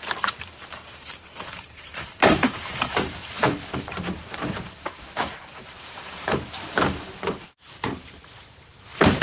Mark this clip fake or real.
fake